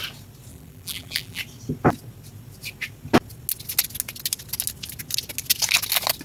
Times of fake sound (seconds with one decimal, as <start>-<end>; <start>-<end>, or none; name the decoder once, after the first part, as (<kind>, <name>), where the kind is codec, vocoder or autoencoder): 0.5-1.4 (vocoder, BigVGAN v2)